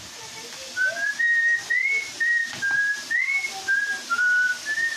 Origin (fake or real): real